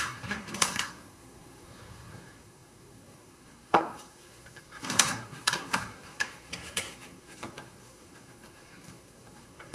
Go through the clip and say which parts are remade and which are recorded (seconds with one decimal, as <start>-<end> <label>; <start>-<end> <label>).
0.0-9.7 remade